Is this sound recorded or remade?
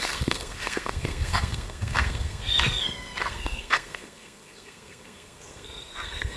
remade